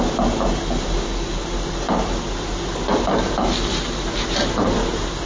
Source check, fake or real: real